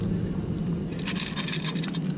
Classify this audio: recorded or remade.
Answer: recorded